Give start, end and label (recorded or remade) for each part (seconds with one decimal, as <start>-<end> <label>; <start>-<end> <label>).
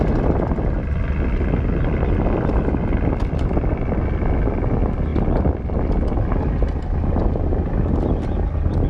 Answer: 0.0-8.9 recorded